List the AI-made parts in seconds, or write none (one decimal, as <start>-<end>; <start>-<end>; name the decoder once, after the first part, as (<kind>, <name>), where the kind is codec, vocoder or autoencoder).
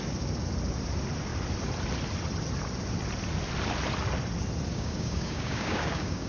4.7-6.3 (codec, DAC)